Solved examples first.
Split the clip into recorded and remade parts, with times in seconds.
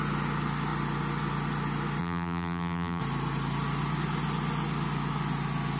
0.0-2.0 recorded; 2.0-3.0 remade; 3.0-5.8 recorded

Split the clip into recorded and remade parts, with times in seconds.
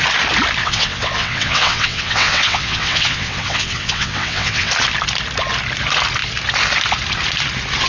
0.0-0.6 recorded; 0.6-4.7 remade; 4.7-7.9 recorded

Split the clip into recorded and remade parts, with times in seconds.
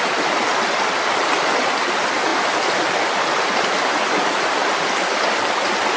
0.0-4.6 recorded; 4.6-5.4 remade; 5.4-6.0 recorded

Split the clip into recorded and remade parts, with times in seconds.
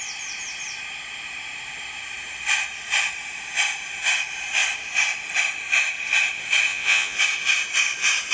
0.0-6.7 recorded; 6.7-7.2 remade; 7.2-8.3 recorded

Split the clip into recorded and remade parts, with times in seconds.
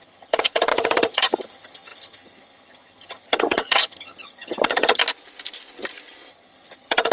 0.0-5.0 remade; 5.0-6.3 recorded; 6.3-7.1 remade